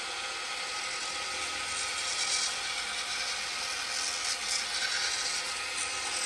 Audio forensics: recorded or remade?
recorded